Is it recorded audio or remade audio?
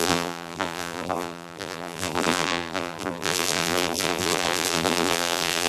remade